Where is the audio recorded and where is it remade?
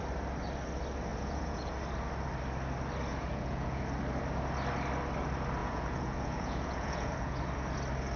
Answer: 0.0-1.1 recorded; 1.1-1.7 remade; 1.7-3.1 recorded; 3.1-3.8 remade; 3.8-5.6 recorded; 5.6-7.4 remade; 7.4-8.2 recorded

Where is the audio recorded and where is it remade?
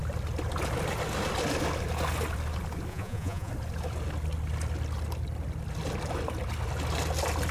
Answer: 0.0-2.9 recorded; 2.9-3.5 remade; 3.5-7.5 recorded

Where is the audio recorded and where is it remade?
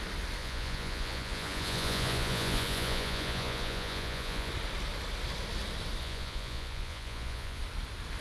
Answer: 0.0-0.4 recorded; 0.4-4.5 remade; 4.5-6.0 recorded; 6.0-7.6 remade; 7.6-8.2 recorded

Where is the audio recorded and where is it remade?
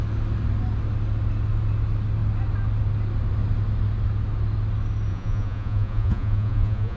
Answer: 0.0-5.1 recorded; 5.1-7.0 remade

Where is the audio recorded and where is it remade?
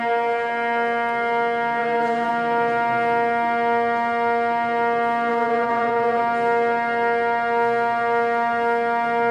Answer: 0.0-1.8 recorded; 1.8-2.3 remade; 2.3-5.3 recorded; 5.3-6.2 remade; 6.2-9.3 recorded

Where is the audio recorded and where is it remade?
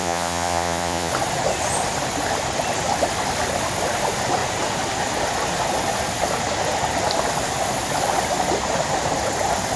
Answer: 0.0-1.1 remade; 1.1-9.8 recorded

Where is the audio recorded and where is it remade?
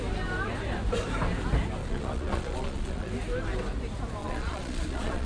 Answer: 0.0-1.8 recorded; 1.8-3.1 remade; 3.1-4.2 recorded; 4.2-5.3 remade